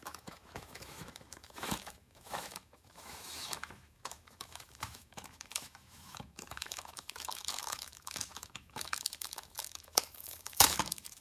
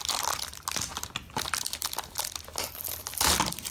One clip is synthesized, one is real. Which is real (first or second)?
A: second